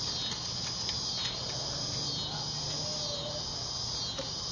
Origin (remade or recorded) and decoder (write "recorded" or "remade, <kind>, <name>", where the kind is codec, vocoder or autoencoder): recorded